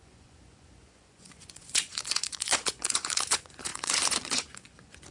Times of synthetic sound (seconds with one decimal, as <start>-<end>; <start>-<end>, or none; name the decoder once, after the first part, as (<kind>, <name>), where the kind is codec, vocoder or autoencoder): 0.0-5.1 (vocoder, Vocos)